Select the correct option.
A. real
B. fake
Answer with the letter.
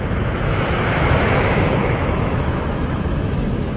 B